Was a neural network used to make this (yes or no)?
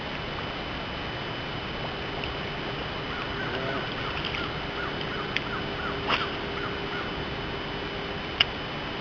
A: no